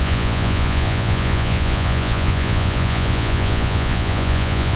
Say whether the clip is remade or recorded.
remade